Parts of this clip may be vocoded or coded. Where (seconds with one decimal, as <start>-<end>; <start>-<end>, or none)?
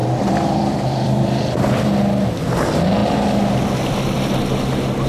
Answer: 0.0-1.9